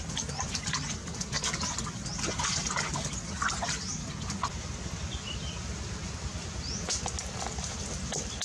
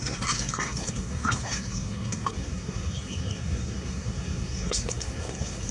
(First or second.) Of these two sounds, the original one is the first